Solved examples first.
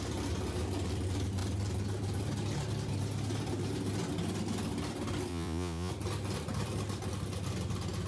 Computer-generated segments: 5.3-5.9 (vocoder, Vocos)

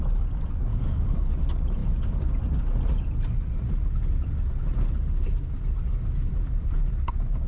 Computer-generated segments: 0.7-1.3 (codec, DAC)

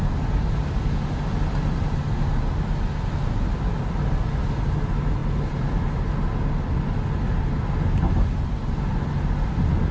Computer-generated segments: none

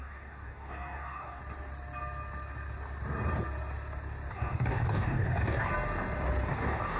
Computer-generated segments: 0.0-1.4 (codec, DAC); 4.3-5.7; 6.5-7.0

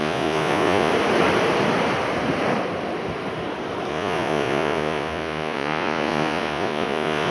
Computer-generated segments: 0.0-0.9 (vocoder, Vocos); 3.9-7.3

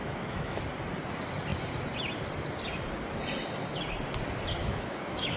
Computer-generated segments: 0.0-0.6 (autoencoder, DAC-VAE); 4.6-5.4

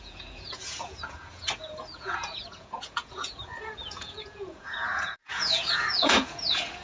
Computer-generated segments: 0.0-6.8 (vocoder, Vocos)

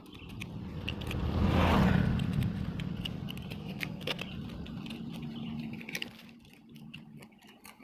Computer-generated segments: 3.6-4.2 (codec, SNAC)